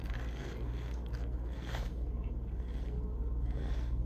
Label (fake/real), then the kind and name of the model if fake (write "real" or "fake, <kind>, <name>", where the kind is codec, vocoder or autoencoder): fake, codec, SNAC